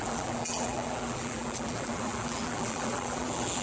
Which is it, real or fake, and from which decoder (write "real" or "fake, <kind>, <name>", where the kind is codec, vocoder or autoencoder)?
fake, vocoder, BigVGAN v2